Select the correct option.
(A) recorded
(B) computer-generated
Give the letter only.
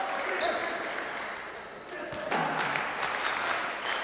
A